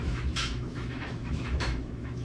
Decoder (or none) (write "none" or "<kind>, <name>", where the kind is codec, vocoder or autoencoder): autoencoder, DAC-VAE